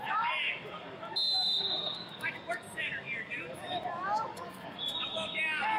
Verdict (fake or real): fake